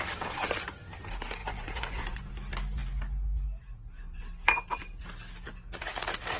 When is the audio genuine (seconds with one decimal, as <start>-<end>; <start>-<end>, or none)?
0.0-1.4; 2.3-6.4

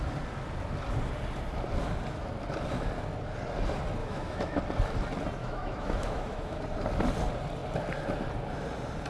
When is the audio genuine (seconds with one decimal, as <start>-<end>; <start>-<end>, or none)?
0.0-4.0; 4.6-5.4; 6.6-9.1

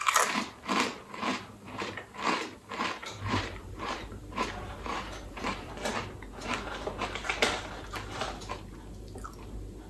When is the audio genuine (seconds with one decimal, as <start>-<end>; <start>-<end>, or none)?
0.0-1.3; 1.9-3.0; 5.7-9.9